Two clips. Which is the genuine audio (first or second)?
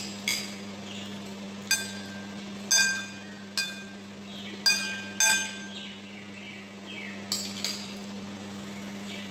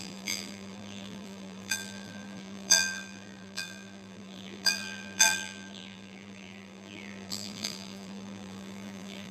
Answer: first